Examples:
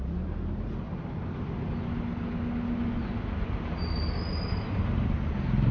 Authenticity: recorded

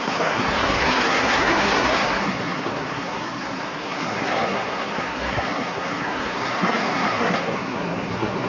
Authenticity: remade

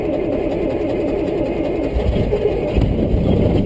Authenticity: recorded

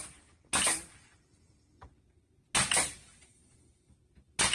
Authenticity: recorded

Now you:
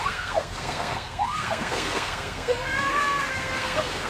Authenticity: remade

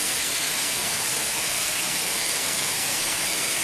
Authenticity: remade